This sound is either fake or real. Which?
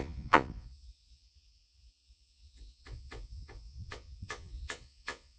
fake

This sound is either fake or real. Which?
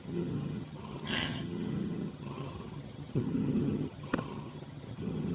fake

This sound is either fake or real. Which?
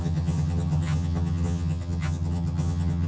fake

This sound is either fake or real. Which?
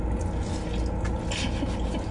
real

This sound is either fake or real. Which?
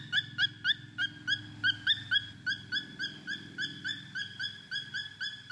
real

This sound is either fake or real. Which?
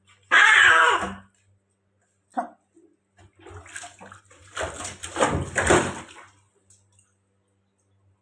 real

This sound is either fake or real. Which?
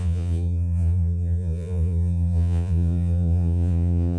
fake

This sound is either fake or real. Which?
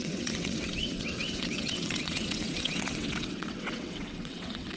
fake